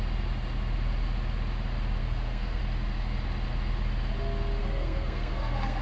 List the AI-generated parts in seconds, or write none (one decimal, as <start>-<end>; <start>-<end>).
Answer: 2.0-2.6; 4.6-5.8